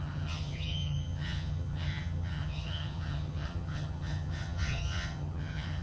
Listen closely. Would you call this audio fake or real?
fake